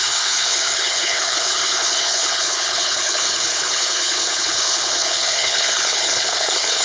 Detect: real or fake fake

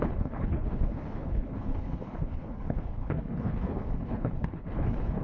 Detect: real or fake fake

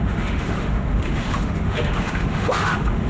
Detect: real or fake fake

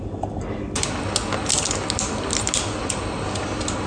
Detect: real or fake real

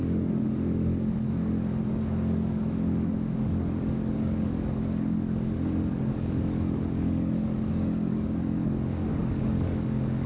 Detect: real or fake fake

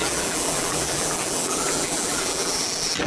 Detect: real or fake fake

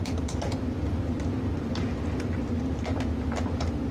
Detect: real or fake real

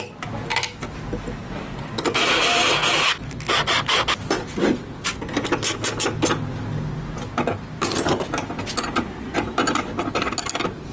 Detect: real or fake real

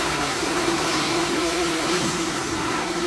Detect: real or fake fake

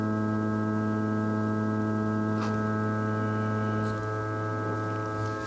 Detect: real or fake real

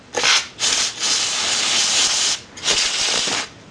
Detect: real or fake real